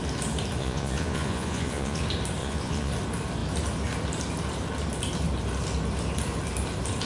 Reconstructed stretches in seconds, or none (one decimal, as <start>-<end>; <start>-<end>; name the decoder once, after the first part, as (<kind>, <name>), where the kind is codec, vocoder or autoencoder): 0.6-2.0 (vocoder, Vocos); 2.4-2.9